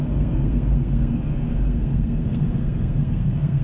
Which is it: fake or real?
fake